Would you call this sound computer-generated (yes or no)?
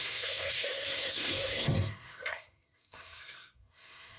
yes